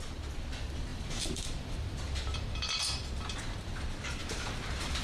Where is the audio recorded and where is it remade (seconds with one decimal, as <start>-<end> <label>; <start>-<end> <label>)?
0.0-0.9 recorded; 0.9-2.8 remade; 2.8-5.0 recorded